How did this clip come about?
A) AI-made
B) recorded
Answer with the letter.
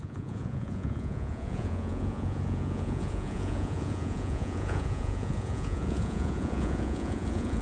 A